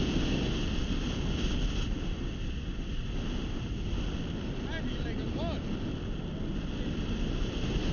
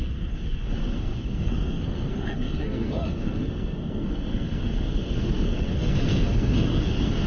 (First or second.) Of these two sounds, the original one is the first